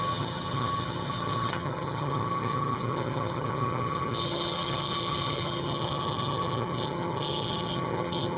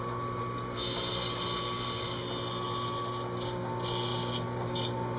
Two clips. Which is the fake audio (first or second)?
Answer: first